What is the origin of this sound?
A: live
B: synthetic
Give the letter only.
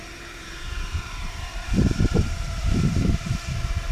B